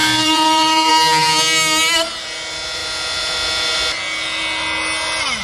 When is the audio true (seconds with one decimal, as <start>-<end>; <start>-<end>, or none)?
0.9-5.4